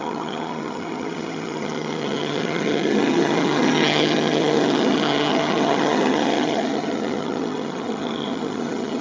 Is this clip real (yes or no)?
no